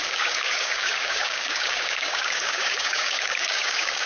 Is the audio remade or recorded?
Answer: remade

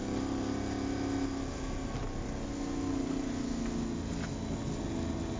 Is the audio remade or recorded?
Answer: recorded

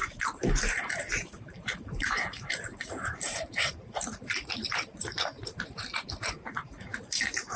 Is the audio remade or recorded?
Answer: remade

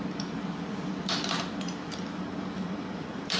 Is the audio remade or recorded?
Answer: remade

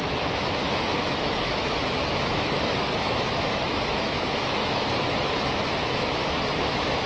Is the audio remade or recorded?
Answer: remade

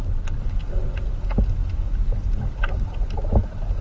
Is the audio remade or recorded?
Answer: recorded